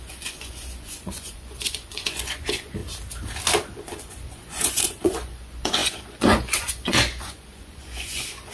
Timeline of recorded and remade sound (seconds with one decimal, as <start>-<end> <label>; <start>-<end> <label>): 0.0-2.8 remade; 2.8-3.8 recorded; 3.8-8.5 remade